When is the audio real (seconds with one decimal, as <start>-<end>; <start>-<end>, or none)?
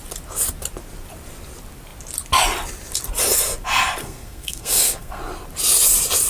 0.0-4.0; 5.2-6.3